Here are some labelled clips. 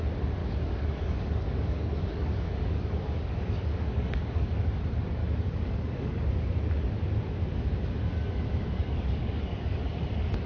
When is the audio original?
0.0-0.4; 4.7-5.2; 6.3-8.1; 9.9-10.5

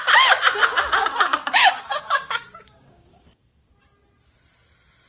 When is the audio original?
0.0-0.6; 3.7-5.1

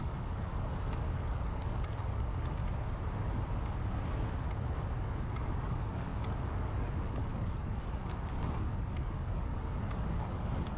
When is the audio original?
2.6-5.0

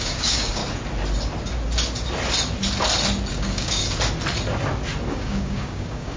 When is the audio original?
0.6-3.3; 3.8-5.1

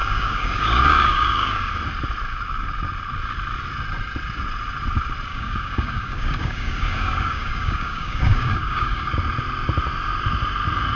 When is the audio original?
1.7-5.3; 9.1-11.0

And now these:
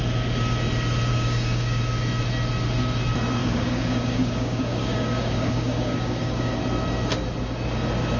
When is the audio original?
0.0-1.1; 1.8-3.4; 6.6-8.2

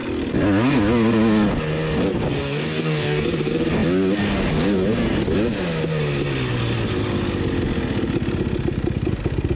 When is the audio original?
0.0-2.4; 3.2-9.6

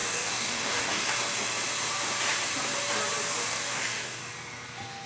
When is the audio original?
1.1-3.5; 4.2-5.1